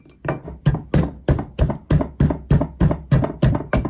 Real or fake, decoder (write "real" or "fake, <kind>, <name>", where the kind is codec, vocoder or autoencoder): real